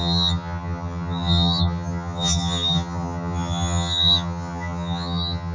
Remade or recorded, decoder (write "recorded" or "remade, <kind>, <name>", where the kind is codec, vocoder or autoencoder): remade, vocoder, HiFi-GAN